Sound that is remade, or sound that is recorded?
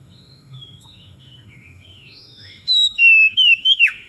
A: remade